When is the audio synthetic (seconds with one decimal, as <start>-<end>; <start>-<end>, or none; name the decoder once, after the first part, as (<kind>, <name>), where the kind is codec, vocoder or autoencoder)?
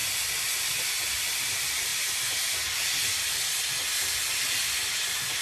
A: none